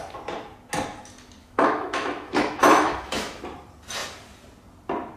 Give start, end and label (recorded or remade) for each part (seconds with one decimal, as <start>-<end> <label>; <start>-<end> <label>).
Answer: 0.0-1.4 recorded; 1.4-3.4 remade; 3.4-5.2 recorded